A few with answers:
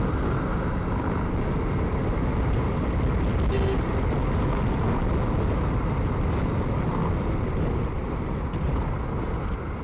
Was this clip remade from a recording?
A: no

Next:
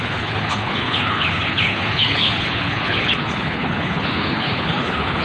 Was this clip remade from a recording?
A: yes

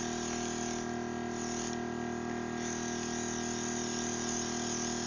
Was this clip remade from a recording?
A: no